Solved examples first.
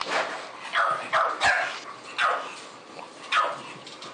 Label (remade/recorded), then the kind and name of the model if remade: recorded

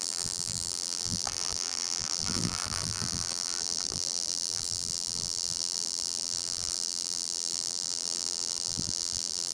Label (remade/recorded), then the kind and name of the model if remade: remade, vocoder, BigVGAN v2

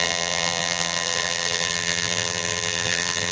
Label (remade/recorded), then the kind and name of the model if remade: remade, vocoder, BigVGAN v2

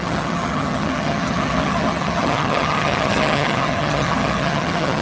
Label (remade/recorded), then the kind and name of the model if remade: remade, vocoder, HiFi-GAN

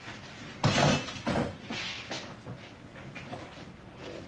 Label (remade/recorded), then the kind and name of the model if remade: recorded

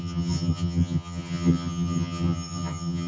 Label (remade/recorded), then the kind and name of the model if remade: remade, vocoder, HiFi-GAN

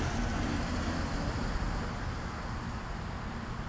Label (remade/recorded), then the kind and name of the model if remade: recorded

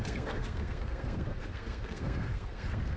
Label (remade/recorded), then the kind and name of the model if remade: remade, codec, SNAC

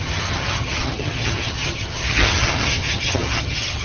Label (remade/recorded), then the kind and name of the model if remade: remade, vocoder, HiFi-GAN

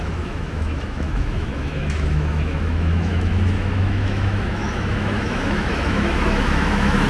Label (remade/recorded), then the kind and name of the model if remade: remade, autoencoder, DAC-VAE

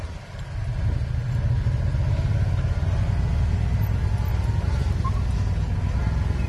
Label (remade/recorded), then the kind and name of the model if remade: recorded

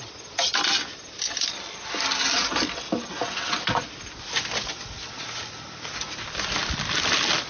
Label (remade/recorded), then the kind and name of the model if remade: recorded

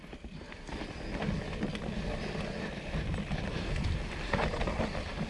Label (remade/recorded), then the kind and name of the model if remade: recorded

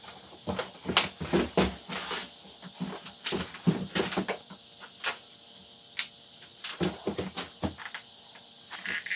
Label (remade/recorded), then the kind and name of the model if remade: recorded